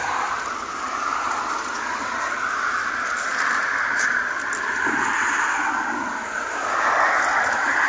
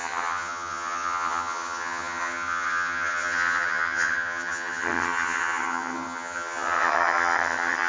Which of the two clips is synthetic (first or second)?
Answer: second